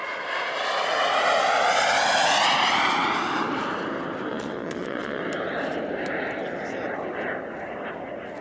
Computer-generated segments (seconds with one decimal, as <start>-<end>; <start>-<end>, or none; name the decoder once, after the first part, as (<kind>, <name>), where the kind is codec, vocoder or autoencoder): 4.3-5.2 (vocoder, Vocos)